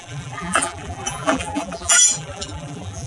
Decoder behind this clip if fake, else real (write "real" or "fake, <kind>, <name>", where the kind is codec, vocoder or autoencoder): fake, vocoder, BigVGAN v2